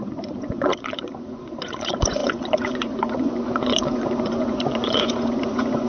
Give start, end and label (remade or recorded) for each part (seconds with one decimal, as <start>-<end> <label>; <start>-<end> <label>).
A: 0.0-5.9 remade